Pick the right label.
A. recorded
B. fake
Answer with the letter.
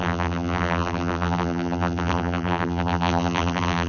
B